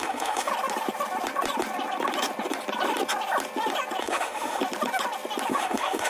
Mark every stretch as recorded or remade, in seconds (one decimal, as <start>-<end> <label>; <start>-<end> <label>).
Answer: 0.0-0.5 remade; 0.5-4.0 recorded; 4.0-4.6 remade; 4.6-5.5 recorded; 5.5-6.1 remade